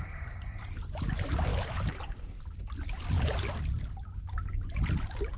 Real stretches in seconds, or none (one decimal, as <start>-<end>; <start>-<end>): 0.0-5.4